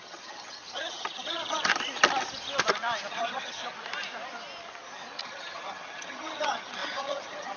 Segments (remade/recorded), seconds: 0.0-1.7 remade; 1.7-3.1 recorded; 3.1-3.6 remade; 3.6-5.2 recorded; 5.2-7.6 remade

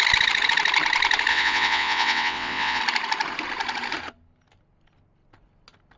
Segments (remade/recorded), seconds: 0.0-1.3 recorded; 1.3-2.8 remade; 2.8-6.0 recorded

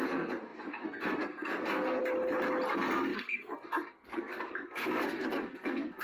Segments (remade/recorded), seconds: 0.0-2.0 remade; 2.0-2.7 recorded; 2.7-6.0 remade

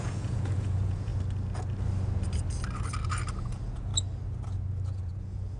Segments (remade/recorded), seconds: 0.0-1.1 remade; 1.1-3.4 recorded; 3.4-3.9 remade; 3.9-4.9 recorded; 4.9-5.6 remade

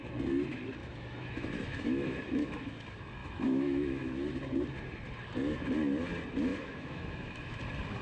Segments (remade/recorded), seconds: 0.0-0.8 recorded; 0.8-2.7 remade; 2.7-3.2 recorded; 3.2-4.1 remade; 4.1-6.5 recorded; 6.5-7.6 remade; 7.6-8.0 recorded